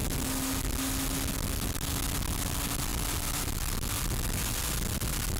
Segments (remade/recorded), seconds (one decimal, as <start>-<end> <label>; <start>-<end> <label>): 0.0-5.4 recorded